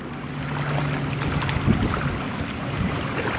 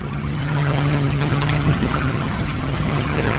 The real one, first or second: first